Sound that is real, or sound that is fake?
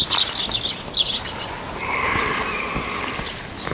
real